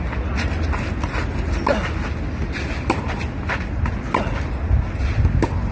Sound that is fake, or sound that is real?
real